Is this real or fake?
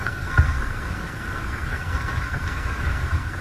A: fake